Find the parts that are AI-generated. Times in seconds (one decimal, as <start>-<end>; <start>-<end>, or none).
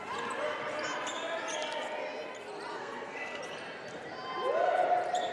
2.7-3.4